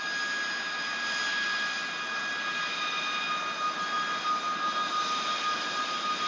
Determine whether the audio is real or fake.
real